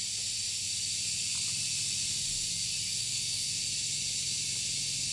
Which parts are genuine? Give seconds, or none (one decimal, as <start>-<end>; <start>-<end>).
0.0-3.0; 3.6-5.1